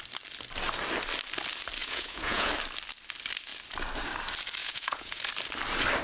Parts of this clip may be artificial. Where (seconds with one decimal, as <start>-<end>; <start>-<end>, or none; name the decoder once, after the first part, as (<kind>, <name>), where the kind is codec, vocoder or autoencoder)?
1.8-2.5 (vocoder, Vocos); 4.6-5.2